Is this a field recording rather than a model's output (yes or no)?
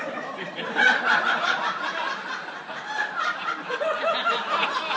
yes